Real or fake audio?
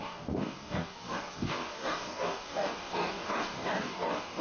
fake